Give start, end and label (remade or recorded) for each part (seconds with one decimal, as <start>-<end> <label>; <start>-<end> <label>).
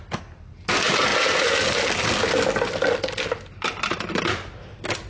0.0-5.1 recorded